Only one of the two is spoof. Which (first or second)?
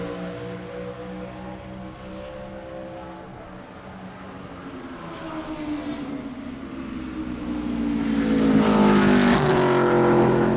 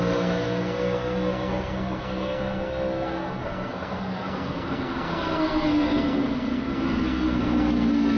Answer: second